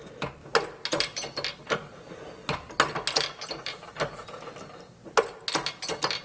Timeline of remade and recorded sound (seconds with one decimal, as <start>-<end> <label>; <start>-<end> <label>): 0.0-6.2 recorded